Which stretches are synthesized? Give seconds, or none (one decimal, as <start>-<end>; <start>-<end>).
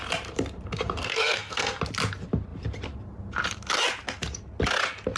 1.0-1.8